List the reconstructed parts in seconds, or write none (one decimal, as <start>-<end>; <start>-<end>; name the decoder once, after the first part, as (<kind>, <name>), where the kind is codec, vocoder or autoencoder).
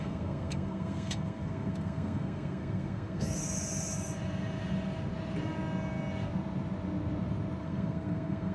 0.0-3.4 (codec, SNAC); 7.6-8.5